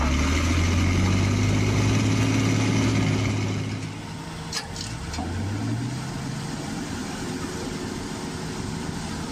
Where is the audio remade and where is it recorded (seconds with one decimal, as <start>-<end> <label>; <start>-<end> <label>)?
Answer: 0.0-9.3 recorded